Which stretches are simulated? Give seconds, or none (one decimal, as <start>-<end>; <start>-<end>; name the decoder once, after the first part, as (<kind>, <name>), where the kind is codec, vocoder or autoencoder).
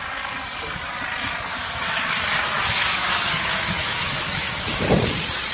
1.5-4.8 (autoencoder, DAC-VAE)